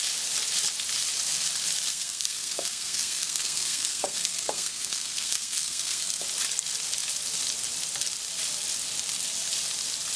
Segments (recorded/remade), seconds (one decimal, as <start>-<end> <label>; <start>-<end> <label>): 0.0-1.9 recorded; 1.9-6.2 remade; 6.2-10.2 recorded